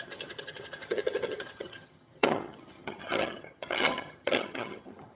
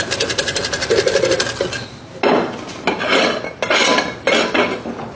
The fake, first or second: first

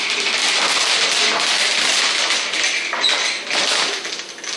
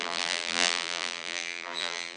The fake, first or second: second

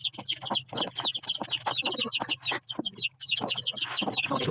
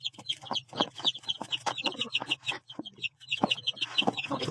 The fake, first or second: second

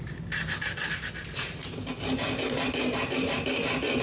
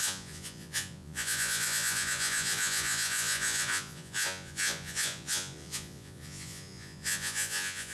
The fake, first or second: second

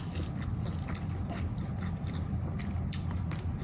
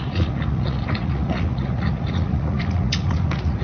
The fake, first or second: second